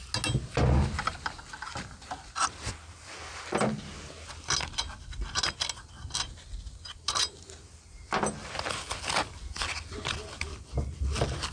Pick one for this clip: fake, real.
real